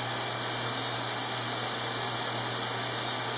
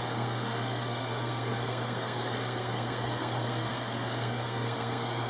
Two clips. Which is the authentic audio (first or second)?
first